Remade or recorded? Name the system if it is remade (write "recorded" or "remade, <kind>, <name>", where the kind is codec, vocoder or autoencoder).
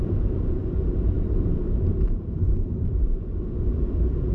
remade, vocoder, BigVGAN v2